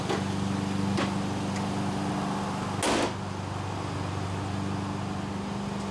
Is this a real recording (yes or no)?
yes